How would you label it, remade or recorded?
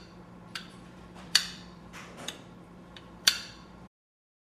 remade